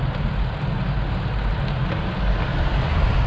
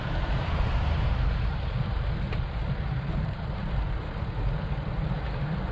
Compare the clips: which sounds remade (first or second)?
second